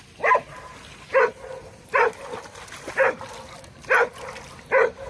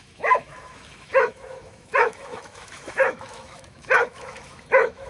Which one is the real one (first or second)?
first